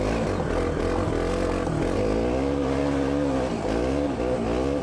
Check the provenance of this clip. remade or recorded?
recorded